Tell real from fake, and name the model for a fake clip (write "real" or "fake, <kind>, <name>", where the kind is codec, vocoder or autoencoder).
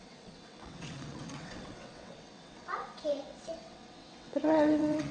fake, vocoder, WaveNeXt